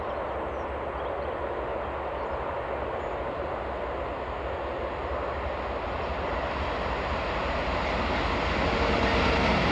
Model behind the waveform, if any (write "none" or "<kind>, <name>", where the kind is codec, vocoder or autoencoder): none